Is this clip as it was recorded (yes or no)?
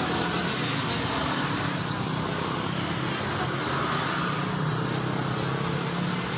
yes